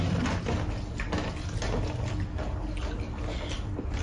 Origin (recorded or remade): recorded